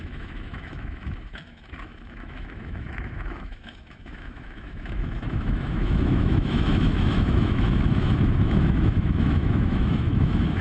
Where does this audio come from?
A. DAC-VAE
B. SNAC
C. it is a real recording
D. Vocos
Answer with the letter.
A